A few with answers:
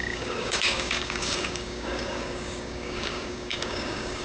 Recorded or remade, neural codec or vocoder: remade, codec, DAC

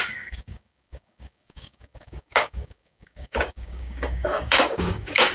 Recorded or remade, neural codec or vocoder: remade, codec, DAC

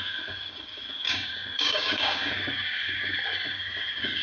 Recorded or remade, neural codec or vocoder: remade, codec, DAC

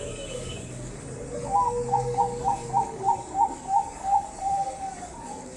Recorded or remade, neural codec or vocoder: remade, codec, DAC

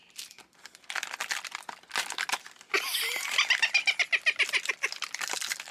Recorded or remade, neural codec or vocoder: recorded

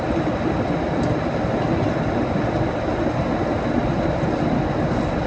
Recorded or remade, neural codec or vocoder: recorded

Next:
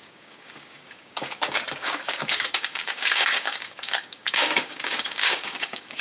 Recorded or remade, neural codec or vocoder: remade, codec, DAC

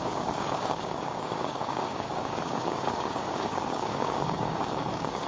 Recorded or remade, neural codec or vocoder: remade, codec, DAC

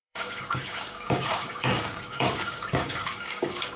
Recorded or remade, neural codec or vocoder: remade, codec, DAC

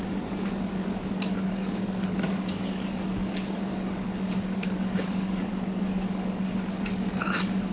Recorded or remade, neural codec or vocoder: remade, codec, DAC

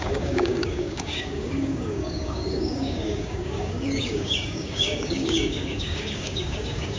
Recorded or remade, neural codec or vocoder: remade, codec, DAC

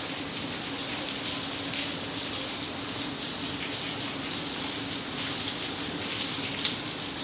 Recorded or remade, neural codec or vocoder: recorded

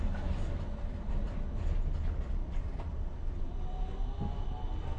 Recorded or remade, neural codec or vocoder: recorded